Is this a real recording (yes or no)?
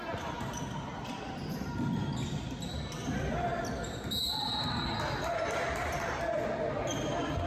yes